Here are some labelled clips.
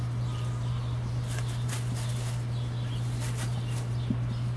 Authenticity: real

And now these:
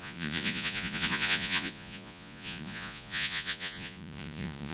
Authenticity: fake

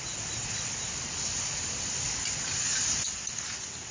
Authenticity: real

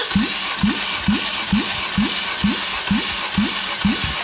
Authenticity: real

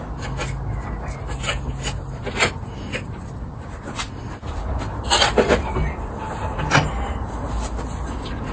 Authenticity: real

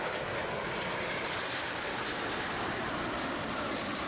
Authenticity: real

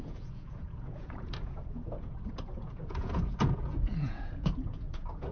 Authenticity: fake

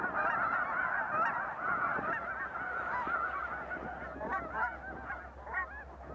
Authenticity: real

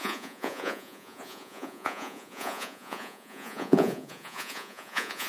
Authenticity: fake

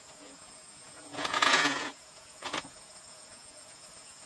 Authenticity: fake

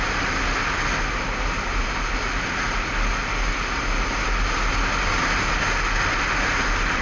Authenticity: real